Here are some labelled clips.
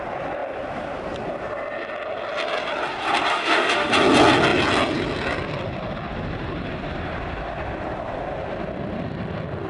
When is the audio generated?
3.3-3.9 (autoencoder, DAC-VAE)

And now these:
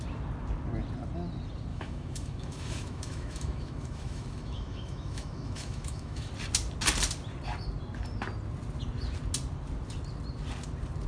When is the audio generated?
1.7-6.3 (autoencoder, DAC-VAE)

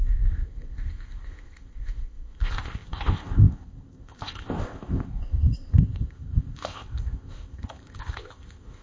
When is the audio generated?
0.0-8.8 (codec, ZipCodec)